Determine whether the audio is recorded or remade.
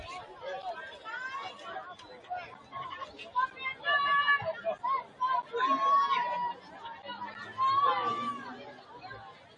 recorded